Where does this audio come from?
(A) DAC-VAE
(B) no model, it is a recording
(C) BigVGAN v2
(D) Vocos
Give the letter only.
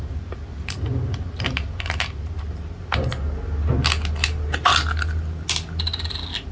B